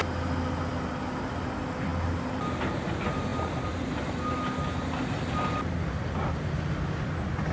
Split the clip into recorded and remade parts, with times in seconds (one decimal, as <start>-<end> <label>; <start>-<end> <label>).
0.0-7.5 recorded